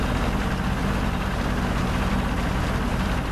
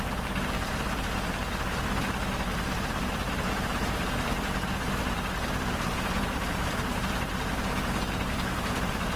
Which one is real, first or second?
first